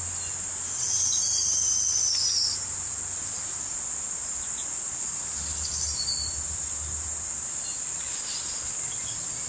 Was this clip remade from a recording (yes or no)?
no